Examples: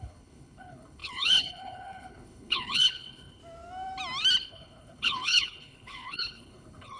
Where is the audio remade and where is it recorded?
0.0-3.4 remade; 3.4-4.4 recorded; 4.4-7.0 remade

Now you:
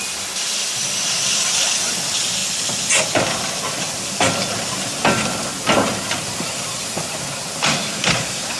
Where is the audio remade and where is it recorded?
0.0-5.9 recorded; 5.9-8.6 remade

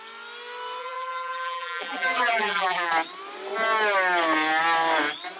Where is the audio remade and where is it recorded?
0.0-0.8 recorded; 0.8-2.9 remade; 2.9-5.4 recorded

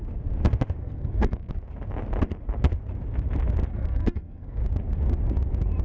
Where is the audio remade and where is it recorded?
0.0-0.8 recorded; 0.8-1.5 remade; 1.5-3.7 recorded; 3.7-4.6 remade; 4.6-5.8 recorded

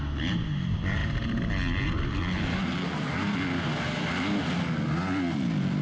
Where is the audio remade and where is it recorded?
0.0-5.8 recorded

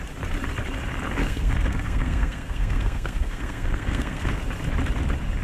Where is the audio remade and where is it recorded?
0.0-1.2 recorded; 1.2-4.4 remade; 4.4-5.4 recorded

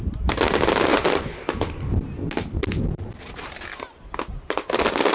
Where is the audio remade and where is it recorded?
0.0-5.1 recorded